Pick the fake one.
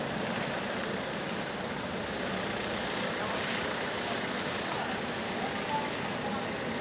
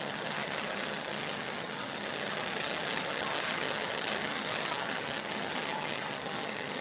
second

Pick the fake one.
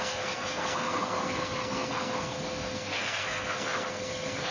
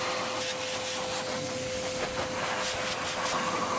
first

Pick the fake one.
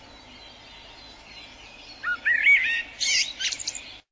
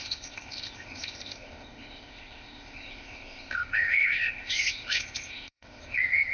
second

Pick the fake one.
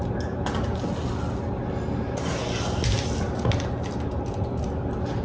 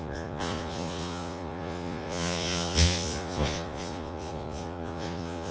second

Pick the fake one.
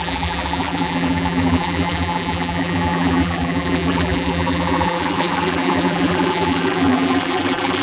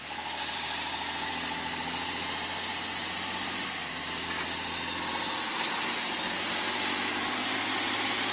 first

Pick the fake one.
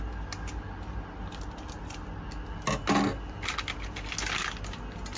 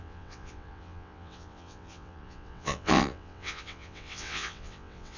second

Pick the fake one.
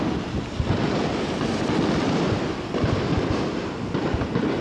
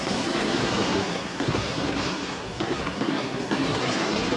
second